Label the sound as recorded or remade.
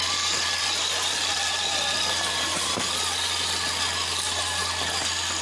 recorded